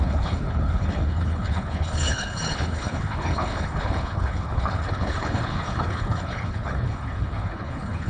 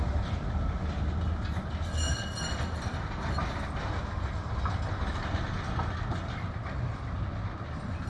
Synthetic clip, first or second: first